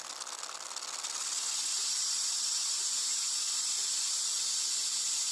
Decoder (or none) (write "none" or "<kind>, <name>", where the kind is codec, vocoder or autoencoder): none